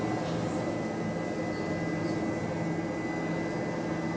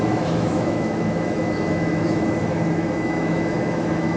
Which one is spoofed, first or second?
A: second